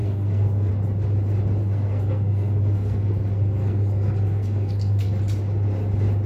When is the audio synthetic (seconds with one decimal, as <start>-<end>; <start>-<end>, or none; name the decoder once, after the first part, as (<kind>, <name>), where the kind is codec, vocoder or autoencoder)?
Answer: 0.0-0.7 (codec, SNAC); 1.6-5.2

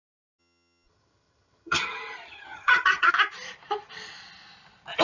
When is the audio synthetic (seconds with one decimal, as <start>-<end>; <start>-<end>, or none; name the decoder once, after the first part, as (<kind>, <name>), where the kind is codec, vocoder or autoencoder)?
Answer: 0.4-3.1 (vocoder, HiFi-GAN)

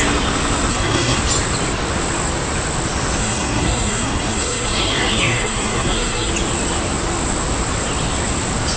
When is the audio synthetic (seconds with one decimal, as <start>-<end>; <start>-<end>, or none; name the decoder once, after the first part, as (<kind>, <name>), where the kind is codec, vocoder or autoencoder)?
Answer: 0.7-1.2 (codec, SNAC); 3.2-6.3

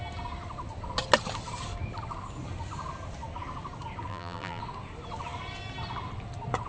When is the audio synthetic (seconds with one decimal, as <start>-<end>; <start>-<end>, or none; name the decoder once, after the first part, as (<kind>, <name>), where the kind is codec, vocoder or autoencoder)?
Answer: 4.1-4.6 (vocoder, BigVGAN v2)

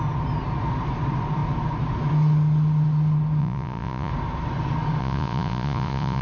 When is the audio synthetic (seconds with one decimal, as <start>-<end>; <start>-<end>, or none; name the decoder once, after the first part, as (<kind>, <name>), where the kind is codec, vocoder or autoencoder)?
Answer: 3.4-4.1 (vocoder, Vocos); 5.0-6.2

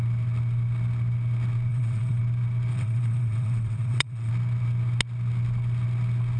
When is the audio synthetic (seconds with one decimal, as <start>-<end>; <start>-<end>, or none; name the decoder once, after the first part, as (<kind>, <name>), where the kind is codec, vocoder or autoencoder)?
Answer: 1.7-2.2 (vocoder, WaveNeXt); 2.7-4.3

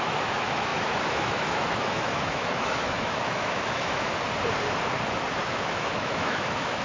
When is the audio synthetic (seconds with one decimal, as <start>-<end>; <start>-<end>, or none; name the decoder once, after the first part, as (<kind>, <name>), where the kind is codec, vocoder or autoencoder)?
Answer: 0.0-4.1 (autoencoder, DAC-VAE); 5.4-6.8

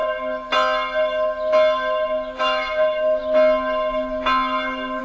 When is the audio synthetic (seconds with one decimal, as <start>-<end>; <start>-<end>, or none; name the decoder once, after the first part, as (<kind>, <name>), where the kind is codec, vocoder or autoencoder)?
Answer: 2.4-3.2 (autoencoder, DAC-VAE)